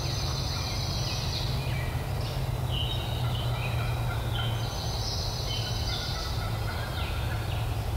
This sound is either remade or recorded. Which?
recorded